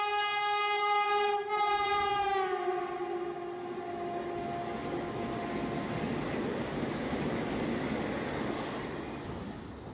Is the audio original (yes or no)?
yes